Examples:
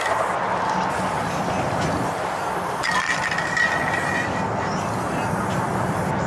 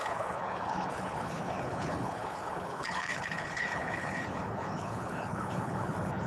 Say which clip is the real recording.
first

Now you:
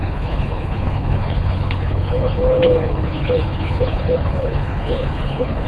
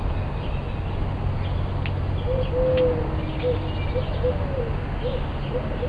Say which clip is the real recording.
second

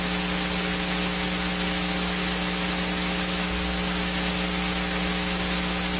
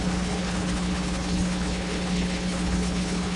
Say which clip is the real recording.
first